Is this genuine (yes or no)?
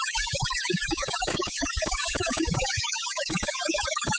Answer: no